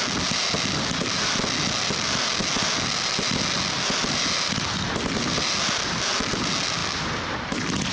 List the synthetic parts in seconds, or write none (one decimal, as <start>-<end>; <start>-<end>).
none